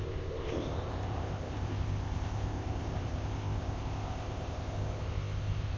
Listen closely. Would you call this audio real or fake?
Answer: fake